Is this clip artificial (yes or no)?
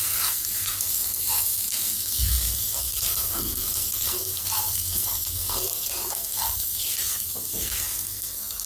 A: yes